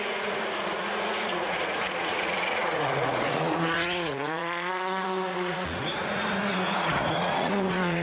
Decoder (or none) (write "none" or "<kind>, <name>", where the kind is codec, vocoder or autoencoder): vocoder, Vocos